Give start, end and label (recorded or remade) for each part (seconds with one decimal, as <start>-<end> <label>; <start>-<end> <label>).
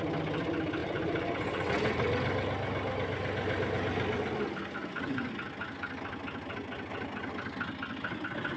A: 0.0-0.8 recorded; 0.8-1.7 remade; 1.7-4.8 recorded; 4.8-5.3 remade; 5.3-8.6 recorded